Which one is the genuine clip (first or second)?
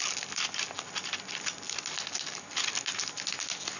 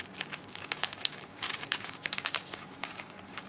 first